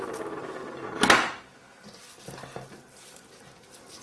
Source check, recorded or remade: recorded